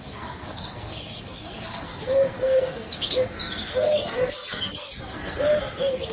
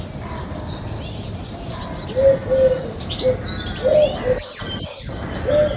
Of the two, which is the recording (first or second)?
second